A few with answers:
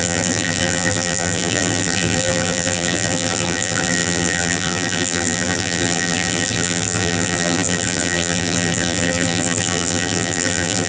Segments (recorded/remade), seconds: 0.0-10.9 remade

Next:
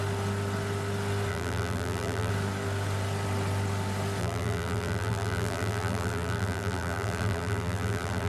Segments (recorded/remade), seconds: 0.0-1.3 recorded; 1.3-2.3 remade; 2.3-4.2 recorded; 4.2-8.3 remade

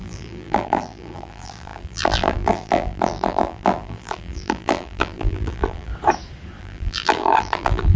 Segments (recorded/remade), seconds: 0.0-5.9 remade; 5.9-6.6 recorded; 6.6-8.0 remade

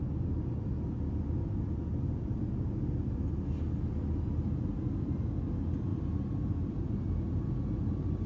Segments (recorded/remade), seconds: 0.0-5.9 recorded; 5.9-6.8 remade; 6.8-8.3 recorded